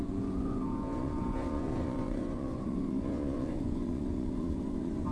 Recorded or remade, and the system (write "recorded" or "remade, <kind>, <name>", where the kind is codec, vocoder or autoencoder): remade, vocoder, Vocos